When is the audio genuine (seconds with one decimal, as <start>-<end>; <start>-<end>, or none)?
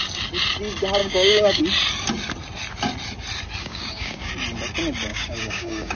0.0-1.0; 1.6-3.6; 4.3-5.1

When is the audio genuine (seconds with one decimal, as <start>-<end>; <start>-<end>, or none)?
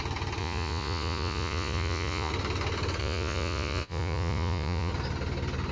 0.0-0.4; 2.3-3.0; 4.9-5.7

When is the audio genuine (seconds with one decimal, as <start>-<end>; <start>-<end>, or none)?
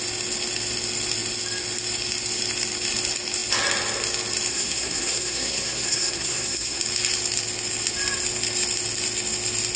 0.0-4.5; 6.8-9.8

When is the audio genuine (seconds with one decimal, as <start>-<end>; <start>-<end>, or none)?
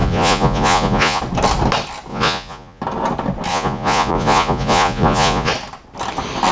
1.2-2.1; 2.8-3.5; 5.5-6.5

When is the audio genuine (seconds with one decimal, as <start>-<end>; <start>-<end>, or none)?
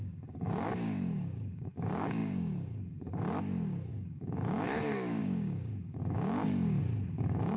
none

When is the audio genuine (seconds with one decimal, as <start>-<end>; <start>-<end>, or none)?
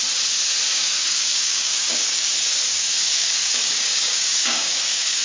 0.0-0.7; 2.3-2.7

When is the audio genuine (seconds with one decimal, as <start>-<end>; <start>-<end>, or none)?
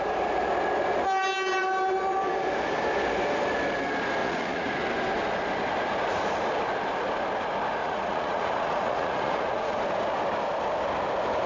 0.0-4.2; 4.7-7.8; 9.8-11.5